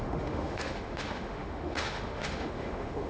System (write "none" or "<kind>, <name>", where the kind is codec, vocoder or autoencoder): autoencoder, DAC-VAE